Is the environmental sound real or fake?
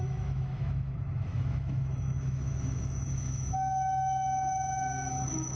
fake